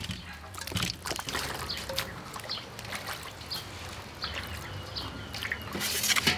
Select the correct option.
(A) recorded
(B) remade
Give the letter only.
A